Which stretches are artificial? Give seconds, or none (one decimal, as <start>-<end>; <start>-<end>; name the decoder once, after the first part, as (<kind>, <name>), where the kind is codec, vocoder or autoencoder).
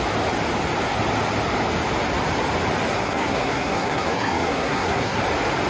2.9-5.2 (codec, SNAC)